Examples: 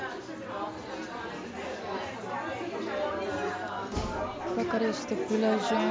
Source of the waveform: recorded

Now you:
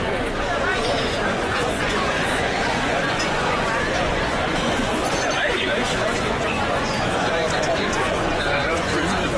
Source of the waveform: remade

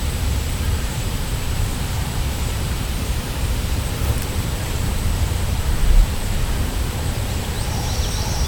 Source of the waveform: remade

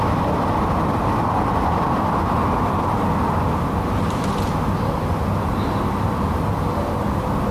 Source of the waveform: recorded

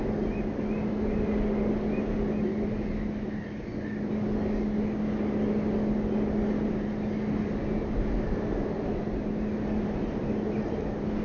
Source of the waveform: recorded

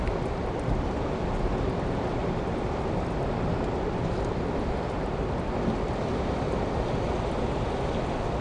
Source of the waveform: recorded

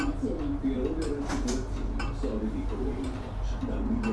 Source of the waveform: recorded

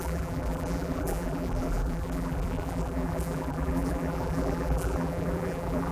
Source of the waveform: remade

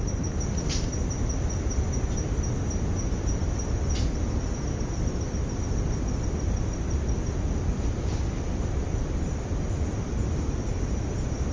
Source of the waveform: recorded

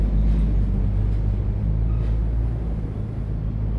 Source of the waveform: recorded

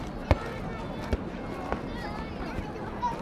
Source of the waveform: recorded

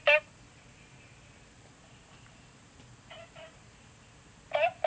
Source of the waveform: recorded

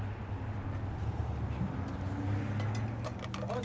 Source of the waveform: recorded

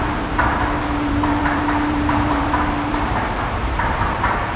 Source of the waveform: remade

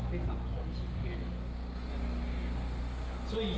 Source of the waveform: recorded